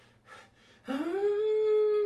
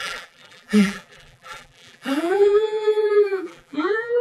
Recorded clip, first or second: first